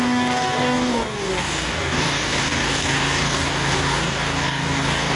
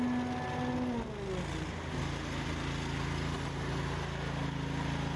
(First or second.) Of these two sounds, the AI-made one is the first